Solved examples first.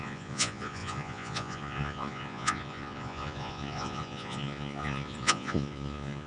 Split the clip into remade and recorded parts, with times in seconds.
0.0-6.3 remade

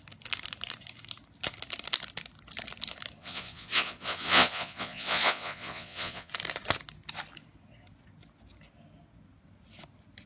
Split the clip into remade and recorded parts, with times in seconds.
0.0-3.2 recorded; 3.2-6.3 remade; 6.3-10.3 recorded

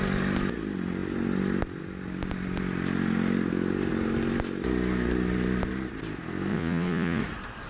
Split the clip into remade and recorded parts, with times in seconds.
0.0-6.5 recorded; 6.5-7.2 remade; 7.2-7.7 recorded

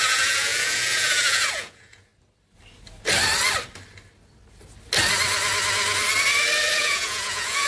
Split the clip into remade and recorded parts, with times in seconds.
0.0-2.1 remade; 2.1-6.7 recorded; 6.7-7.7 remade

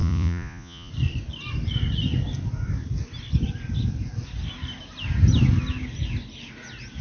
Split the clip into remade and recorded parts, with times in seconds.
0.0-0.9 remade; 0.9-7.0 recorded

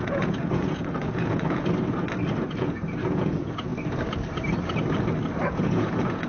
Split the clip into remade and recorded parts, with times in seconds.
0.0-1.6 remade; 1.6-2.4 recorded; 2.4-3.7 remade; 3.7-5.5 recorded; 5.5-6.3 remade